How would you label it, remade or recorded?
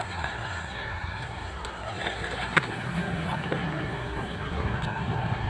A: remade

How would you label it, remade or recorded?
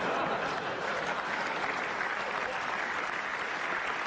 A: recorded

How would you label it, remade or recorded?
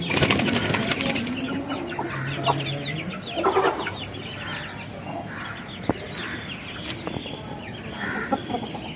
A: recorded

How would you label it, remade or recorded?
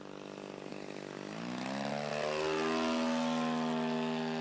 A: recorded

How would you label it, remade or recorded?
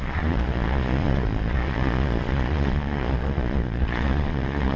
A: remade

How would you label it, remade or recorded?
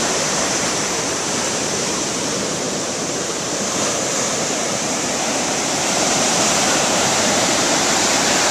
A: remade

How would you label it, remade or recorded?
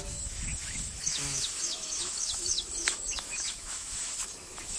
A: remade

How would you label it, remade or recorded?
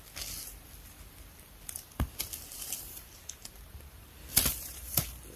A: remade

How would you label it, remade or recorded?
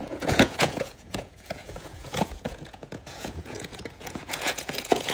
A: remade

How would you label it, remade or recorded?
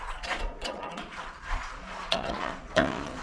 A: remade